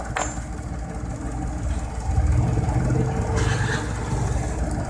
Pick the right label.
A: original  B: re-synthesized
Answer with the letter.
A